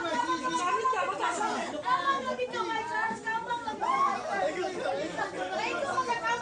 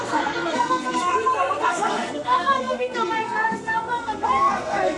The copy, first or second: second